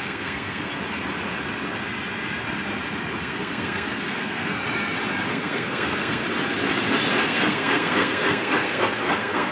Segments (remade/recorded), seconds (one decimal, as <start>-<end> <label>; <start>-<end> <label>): 0.0-0.7 remade; 0.7-3.2 recorded; 3.2-4.6 remade; 4.6-5.3 recorded; 5.3-6.2 remade; 6.2-7.1 recorded; 7.1-9.5 remade